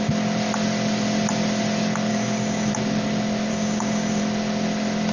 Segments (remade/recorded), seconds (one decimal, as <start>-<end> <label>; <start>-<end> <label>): 0.0-2.1 recorded; 2.1-2.7 remade; 2.7-3.5 recorded; 3.5-4.2 remade; 4.2-5.1 recorded